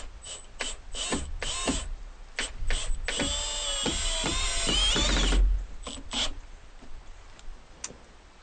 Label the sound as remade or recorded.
recorded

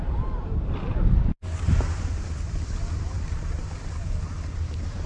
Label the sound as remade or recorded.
recorded